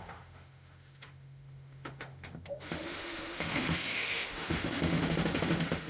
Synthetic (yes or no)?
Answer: yes